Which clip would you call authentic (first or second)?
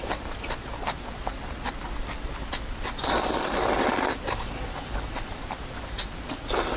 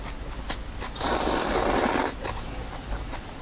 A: second